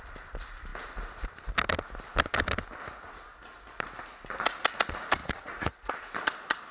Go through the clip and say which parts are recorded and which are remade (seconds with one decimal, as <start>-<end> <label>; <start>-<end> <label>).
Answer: 0.0-5.2 recorded; 5.2-5.9 remade; 5.9-6.7 recorded